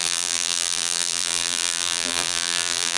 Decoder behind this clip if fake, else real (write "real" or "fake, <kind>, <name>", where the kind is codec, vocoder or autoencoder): fake, vocoder, BigVGAN v2